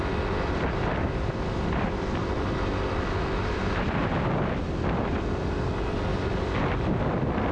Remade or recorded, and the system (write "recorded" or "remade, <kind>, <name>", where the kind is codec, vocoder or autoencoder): recorded